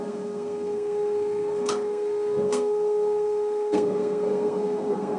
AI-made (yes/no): yes